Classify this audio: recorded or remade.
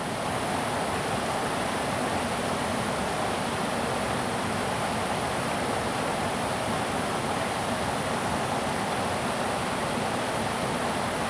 recorded